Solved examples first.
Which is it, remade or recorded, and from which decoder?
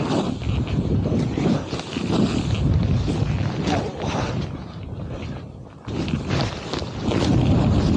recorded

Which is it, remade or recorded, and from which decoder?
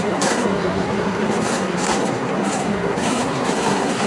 remade, codec, SNAC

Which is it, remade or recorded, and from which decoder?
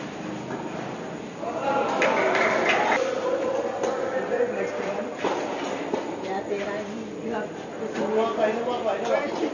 recorded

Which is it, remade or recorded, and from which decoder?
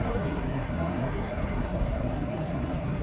remade, codec, SNAC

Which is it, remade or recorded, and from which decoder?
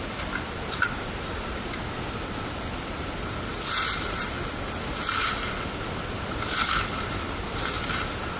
recorded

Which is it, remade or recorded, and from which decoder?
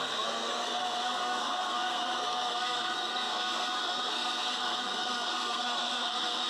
remade, codec, SNAC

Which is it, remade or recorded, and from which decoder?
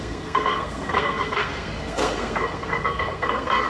remade, codec, SNAC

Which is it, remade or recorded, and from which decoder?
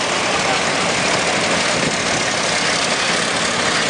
recorded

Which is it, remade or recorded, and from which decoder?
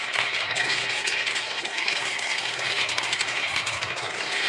remade, codec, SNAC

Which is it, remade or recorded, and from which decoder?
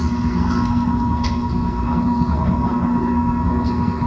remade, codec, SNAC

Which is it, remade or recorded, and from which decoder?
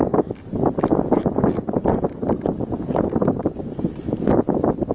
recorded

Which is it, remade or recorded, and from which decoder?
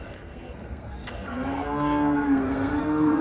remade, codec, SNAC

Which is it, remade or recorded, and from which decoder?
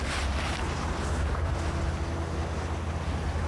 recorded